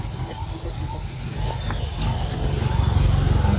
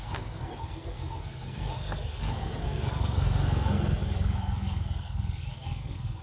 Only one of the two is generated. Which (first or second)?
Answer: second